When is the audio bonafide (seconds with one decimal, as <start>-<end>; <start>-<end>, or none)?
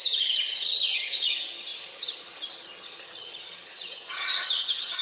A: none